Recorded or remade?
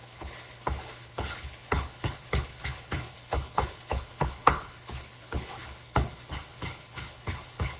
remade